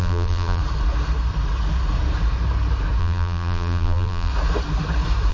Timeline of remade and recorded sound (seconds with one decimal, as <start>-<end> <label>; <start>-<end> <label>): 0.0-0.6 remade; 0.6-3.0 recorded; 3.0-4.3 remade; 4.3-5.3 recorded